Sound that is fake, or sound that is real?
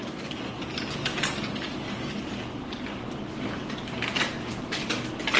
real